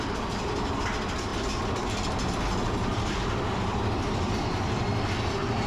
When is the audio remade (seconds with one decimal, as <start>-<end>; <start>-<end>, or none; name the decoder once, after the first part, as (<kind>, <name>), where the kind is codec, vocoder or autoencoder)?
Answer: none